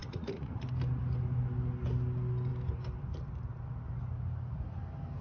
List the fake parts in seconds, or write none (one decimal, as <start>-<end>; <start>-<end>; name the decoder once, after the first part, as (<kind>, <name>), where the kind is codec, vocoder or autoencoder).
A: 0.0-0.6 (vocoder, Vocos)